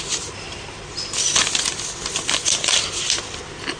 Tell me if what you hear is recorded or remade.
recorded